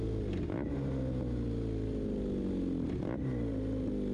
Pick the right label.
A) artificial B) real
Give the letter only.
B